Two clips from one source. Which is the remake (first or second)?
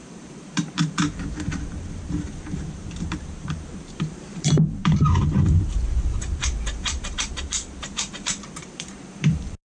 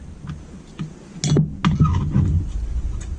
first